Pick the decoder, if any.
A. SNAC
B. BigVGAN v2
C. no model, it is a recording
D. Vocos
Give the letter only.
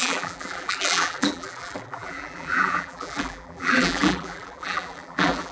B